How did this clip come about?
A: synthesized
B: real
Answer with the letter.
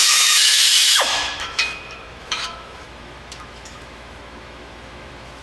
A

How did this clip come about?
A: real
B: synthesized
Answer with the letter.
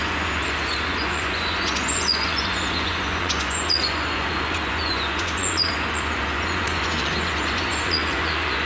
B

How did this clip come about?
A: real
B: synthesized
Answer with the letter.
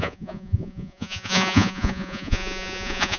B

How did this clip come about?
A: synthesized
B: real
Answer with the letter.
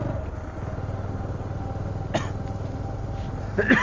B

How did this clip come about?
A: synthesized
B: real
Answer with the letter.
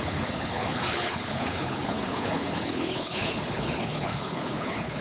A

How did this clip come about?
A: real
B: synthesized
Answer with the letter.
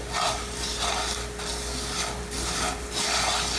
A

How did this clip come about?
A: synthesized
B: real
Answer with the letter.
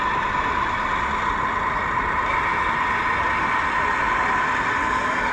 B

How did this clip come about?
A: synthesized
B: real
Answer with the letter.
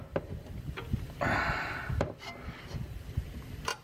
B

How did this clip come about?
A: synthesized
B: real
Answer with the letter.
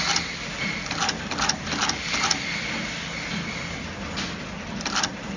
B